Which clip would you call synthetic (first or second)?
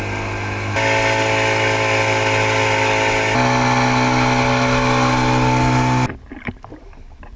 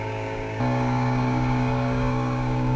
second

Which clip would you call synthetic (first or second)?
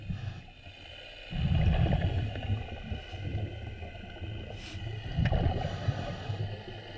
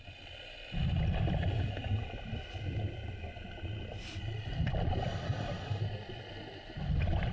second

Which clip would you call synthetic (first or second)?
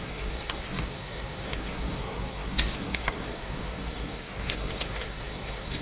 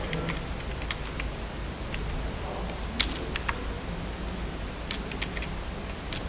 first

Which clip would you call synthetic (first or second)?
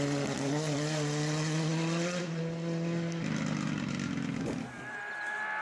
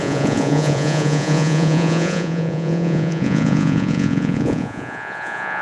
second